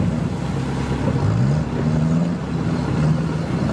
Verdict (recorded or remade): recorded